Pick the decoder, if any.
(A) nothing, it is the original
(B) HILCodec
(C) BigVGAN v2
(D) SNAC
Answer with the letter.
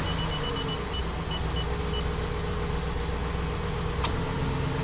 A